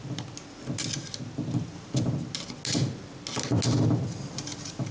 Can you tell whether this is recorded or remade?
recorded